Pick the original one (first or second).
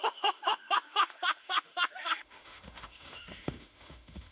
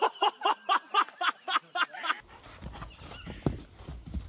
second